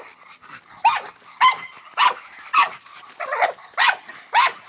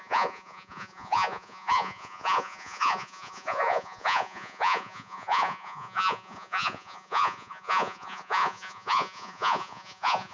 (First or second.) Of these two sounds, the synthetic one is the second